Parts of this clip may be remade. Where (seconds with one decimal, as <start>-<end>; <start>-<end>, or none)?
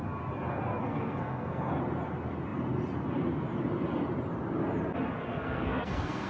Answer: 0.8-1.7; 5.3-6.3